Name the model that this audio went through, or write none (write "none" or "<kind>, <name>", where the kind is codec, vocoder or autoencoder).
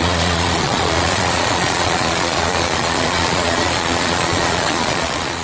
vocoder, Vocos